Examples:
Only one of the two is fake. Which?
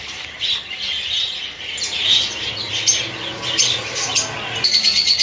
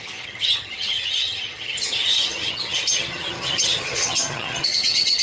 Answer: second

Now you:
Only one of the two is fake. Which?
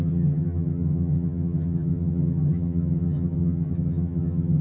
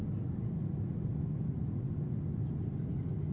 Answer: first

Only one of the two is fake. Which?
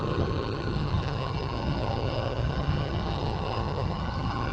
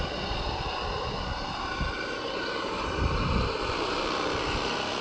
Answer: first